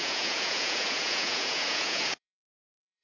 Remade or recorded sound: remade